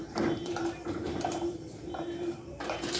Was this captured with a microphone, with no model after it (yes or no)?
no